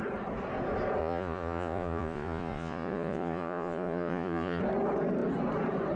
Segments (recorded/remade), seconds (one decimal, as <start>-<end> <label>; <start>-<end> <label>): 0.0-1.0 recorded; 1.0-4.6 remade; 4.6-6.0 recorded